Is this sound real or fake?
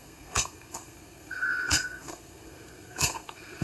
fake